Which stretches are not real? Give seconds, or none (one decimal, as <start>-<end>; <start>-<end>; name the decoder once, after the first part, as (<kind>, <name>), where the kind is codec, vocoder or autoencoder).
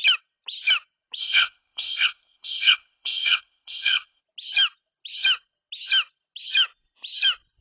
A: 1.2-4.2 (codec, ZipCodec)